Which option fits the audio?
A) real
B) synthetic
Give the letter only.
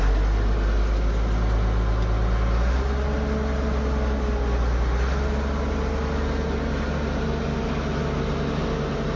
A